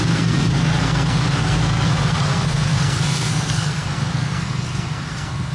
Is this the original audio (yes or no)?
no